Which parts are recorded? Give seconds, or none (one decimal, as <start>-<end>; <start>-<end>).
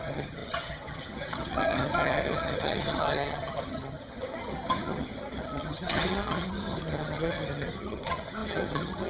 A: none